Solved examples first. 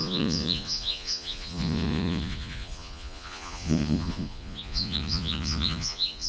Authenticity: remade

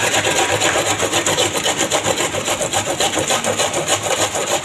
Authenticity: recorded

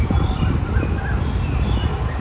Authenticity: recorded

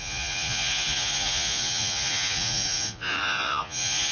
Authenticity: remade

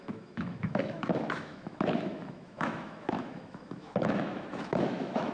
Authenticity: remade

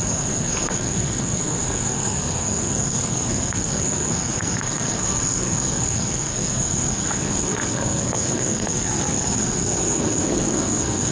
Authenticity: remade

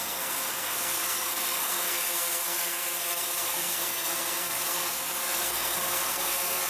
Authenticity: remade